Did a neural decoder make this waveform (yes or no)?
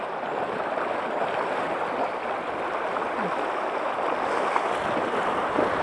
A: no